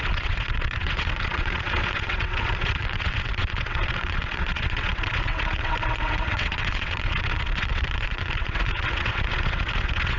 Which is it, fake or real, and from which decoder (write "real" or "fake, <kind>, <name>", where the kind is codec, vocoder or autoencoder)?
fake, vocoder, WaveNeXt